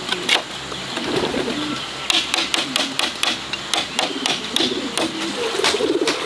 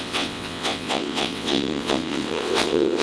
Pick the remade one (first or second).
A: second